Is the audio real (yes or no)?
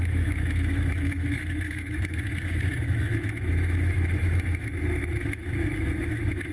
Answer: no